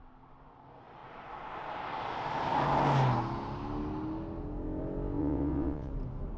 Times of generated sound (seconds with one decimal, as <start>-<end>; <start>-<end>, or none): 5.2-5.9